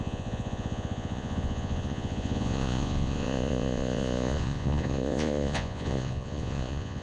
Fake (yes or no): yes